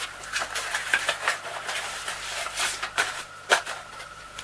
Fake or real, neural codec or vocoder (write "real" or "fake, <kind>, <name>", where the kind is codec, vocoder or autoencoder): fake, vocoder, BigVGAN v2